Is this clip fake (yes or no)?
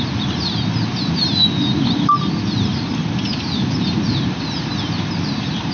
no